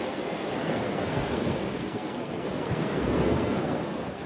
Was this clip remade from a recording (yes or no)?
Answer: yes